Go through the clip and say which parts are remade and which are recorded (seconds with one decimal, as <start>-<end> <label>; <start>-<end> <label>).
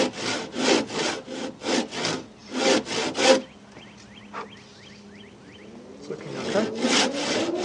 0.0-7.6 recorded